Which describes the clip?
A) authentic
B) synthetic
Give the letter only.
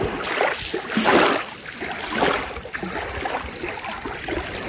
A